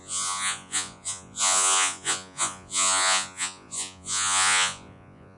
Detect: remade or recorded remade